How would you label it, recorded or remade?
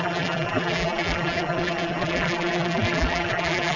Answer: remade